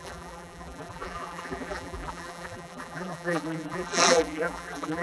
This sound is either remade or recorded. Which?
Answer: remade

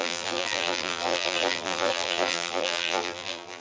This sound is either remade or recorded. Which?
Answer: remade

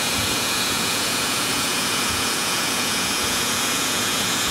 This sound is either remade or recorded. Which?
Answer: remade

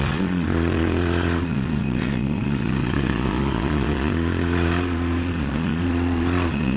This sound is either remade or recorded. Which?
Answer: remade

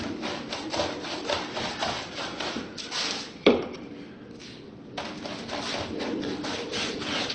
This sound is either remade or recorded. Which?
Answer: recorded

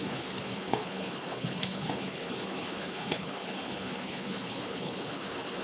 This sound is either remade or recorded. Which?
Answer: remade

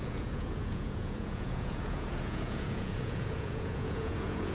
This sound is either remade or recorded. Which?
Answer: remade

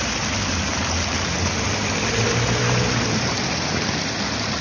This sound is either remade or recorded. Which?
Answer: recorded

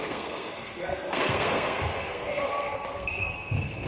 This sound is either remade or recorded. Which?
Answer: remade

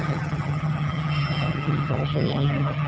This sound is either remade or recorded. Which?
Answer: remade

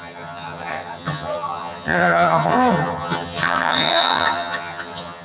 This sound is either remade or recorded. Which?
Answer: remade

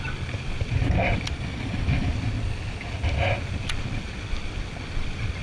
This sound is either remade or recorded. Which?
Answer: recorded